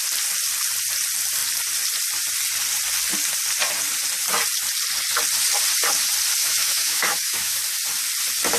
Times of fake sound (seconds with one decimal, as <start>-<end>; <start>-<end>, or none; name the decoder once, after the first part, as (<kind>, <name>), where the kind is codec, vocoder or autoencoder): 6.4-7.6 (autoencoder, DAC-VAE)